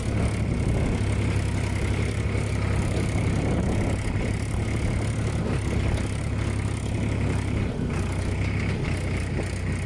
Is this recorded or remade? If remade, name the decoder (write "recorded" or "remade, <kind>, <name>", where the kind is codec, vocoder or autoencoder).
recorded